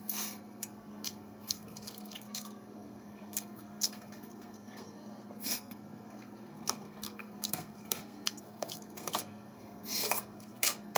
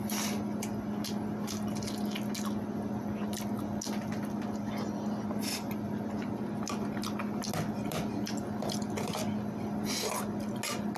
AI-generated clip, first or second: first